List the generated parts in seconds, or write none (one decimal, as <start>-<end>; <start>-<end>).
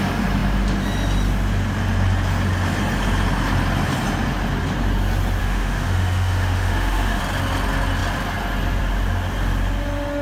5.4-7.2